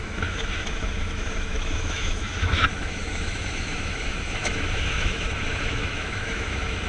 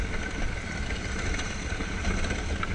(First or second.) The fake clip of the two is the first